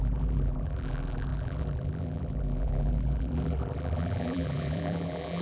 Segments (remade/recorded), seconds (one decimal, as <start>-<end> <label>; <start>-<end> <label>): 0.0-5.4 remade